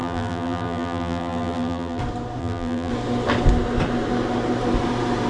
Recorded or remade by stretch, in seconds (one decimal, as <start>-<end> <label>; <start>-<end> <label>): 0.0-2.0 remade; 2.0-2.4 recorded; 2.4-2.9 remade; 2.9-5.3 recorded